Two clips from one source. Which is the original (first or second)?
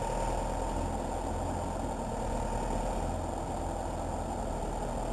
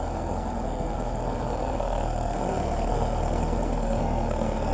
first